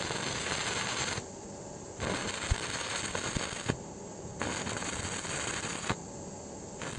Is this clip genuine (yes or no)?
yes